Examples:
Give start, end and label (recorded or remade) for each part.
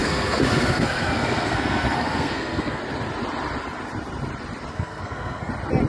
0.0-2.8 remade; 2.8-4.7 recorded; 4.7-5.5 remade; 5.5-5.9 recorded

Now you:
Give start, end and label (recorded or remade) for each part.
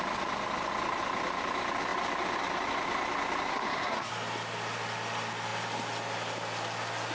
0.0-3.5 recorded; 3.5-4.1 remade; 4.1-7.1 recorded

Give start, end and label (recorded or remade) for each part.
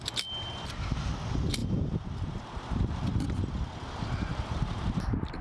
0.0-1.6 recorded; 1.6-3.1 remade; 3.1-4.3 recorded; 4.3-5.4 remade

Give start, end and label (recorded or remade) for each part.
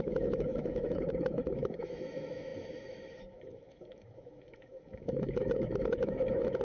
0.0-6.6 remade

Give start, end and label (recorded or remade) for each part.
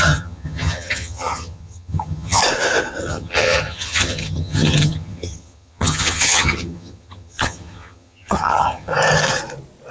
0.0-2.4 remade; 2.4-3.0 recorded; 3.0-8.9 remade; 8.9-9.9 recorded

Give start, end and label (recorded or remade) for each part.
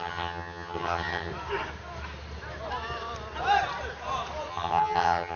0.0-1.3 remade; 1.3-4.5 recorded; 4.5-5.4 remade